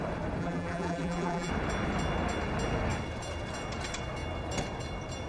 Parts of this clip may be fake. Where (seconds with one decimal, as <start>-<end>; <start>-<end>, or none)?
0.4-1.5